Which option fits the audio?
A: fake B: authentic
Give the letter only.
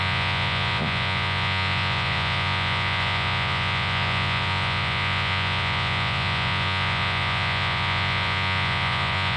A